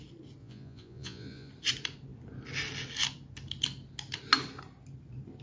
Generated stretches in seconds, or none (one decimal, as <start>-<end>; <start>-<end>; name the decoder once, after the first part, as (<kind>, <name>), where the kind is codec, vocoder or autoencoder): 0.4-1.5 (vocoder, Vocos)